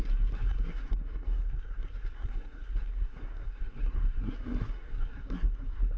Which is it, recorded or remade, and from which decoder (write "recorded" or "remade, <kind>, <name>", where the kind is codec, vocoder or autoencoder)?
remade, codec, SNAC